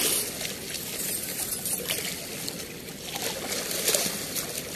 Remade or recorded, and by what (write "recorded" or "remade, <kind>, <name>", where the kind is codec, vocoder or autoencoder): recorded